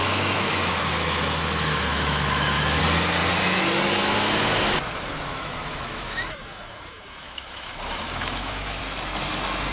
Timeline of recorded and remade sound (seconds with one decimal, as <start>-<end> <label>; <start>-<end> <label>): 0.0-2.8 remade; 2.8-5.3 recorded; 5.3-8.8 remade; 8.8-9.7 recorded